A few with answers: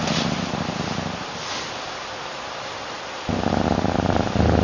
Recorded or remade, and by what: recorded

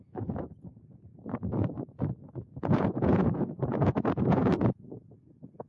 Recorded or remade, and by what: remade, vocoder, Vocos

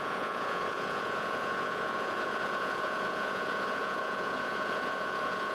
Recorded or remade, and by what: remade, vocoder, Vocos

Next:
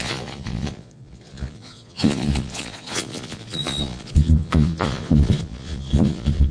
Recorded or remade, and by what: remade, vocoder, Vocos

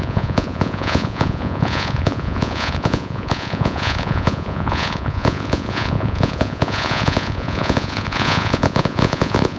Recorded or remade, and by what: remade, vocoder, Vocos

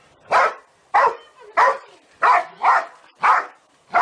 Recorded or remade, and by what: recorded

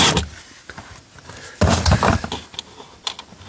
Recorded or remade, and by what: recorded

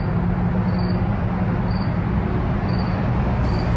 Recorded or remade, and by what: recorded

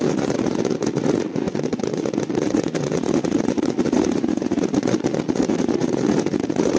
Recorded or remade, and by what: remade, vocoder, Vocos